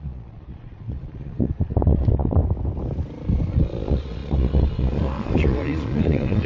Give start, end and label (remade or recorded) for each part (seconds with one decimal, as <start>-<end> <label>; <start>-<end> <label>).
0.0-2.4 remade; 2.4-3.5 recorded; 3.5-6.5 remade